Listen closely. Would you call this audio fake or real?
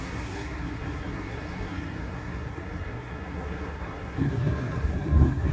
fake